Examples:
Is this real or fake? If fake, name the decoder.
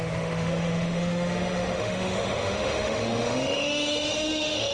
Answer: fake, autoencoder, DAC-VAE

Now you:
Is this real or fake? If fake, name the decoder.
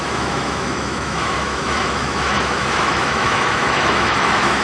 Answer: fake, autoencoder, DAC-VAE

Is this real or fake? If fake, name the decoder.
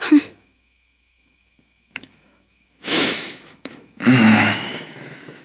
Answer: fake, autoencoder, DAC-VAE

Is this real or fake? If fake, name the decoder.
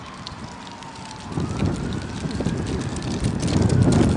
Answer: real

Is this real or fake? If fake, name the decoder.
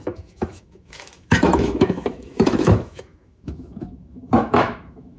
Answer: fake, autoencoder, DAC-VAE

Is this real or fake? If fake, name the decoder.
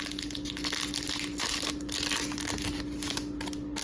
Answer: real